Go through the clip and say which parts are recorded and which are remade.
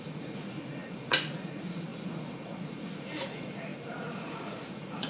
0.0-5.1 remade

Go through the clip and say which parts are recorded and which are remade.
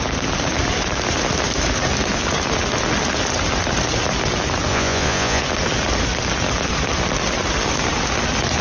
0.0-4.7 recorded; 4.7-5.4 remade; 5.4-8.6 recorded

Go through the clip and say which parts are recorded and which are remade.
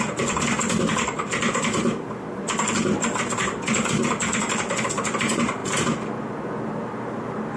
0.0-7.6 recorded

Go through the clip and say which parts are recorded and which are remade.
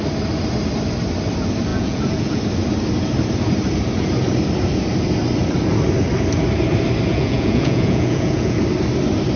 0.0-1.7 recorded; 1.7-2.4 remade; 2.4-7.1 recorded; 7.1-8.6 remade; 8.6-9.4 recorded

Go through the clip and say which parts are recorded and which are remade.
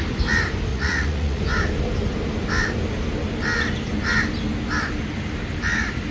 0.0-0.7 recorded; 0.7-1.4 remade; 1.4-6.1 recorded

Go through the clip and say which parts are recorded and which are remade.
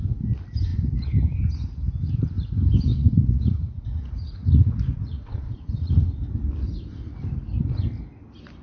0.0-2.9 recorded; 2.9-5.9 remade; 5.9-8.6 recorded